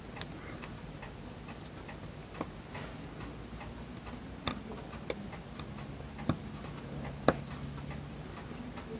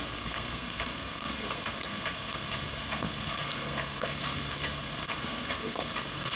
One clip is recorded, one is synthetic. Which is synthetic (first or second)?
second